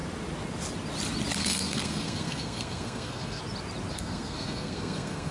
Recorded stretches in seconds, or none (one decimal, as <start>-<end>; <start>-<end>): 0.0-1.4; 3.4-3.9